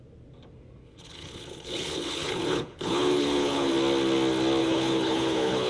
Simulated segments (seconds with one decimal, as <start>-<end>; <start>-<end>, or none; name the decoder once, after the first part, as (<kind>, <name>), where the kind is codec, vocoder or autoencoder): 0.8-3.7 (codec, HILCodec); 4.6-5.7